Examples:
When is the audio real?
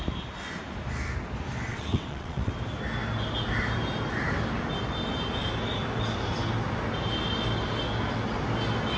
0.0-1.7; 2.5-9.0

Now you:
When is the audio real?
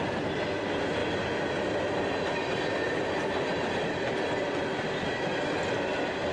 0.0-6.3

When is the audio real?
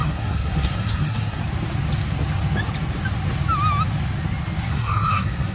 1.4-4.7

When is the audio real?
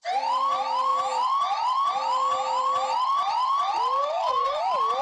0.0-4.0; 4.6-5.0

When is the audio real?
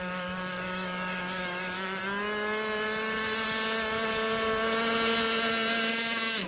2.0-5.9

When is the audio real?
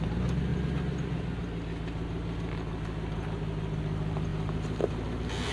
0.0-5.5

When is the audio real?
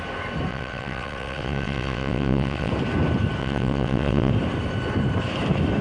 0.0-0.5; 2.7-3.4; 4.3-5.8